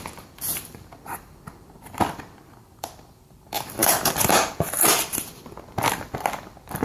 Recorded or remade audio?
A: remade